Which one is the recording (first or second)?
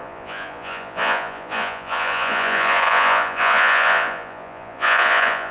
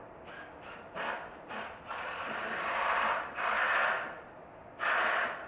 second